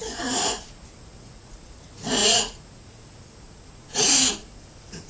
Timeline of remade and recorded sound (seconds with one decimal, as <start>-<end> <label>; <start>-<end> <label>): 0.0-5.1 remade